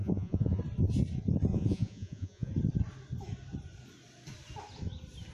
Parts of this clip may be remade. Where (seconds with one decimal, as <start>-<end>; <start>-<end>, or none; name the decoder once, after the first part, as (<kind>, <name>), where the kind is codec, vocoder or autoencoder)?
0.0-0.6 (vocoder, Vocos); 1.5-2.5